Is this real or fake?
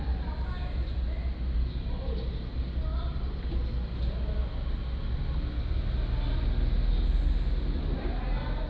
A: real